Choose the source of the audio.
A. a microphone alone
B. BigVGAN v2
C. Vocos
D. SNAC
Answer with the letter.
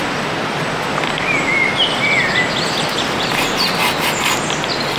A